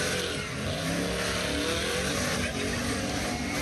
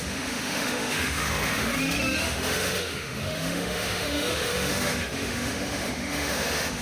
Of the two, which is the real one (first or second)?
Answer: first